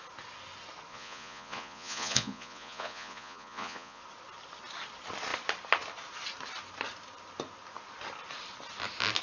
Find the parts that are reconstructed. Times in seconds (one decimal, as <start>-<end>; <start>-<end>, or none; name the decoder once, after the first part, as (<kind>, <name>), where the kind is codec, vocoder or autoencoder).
0.9-4.0 (vocoder, Vocos)